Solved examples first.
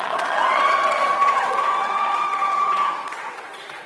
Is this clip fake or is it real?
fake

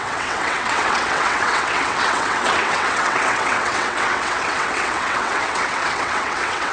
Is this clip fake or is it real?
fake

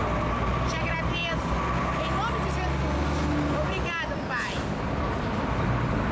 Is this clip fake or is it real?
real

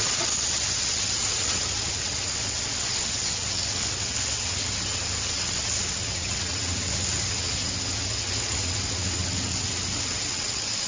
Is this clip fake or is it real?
fake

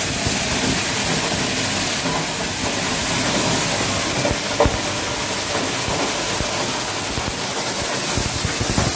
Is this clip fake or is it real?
real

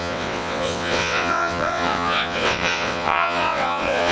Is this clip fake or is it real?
fake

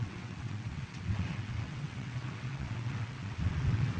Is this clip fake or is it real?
fake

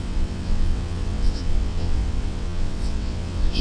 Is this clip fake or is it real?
fake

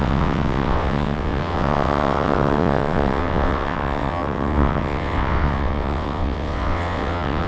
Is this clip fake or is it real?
fake